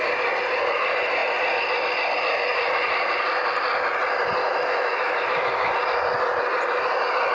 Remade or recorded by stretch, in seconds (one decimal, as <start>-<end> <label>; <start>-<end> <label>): 0.0-4.4 recorded; 4.4-5.7 remade; 5.7-7.3 recorded